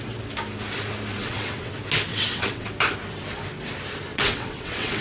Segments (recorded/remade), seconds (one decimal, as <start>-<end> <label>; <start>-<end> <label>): 0.0-1.1 recorded; 1.1-1.7 remade; 1.7-2.1 recorded; 2.1-2.7 remade; 2.7-4.1 recorded; 4.1-5.0 remade

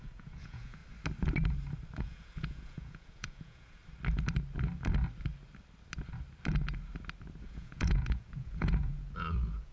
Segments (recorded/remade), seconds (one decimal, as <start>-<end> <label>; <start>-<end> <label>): 0.0-0.8 remade; 0.8-2.0 recorded; 2.0-3.8 remade; 3.8-7.4 recorded; 7.4-9.7 remade